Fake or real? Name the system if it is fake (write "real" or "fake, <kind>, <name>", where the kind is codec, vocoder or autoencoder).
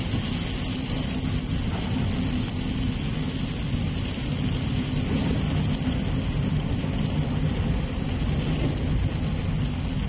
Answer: real